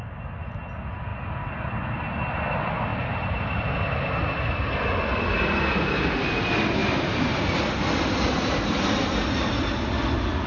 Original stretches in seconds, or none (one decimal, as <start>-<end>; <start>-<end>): 0.0-2.9; 4.8-6.8; 7.4-10.5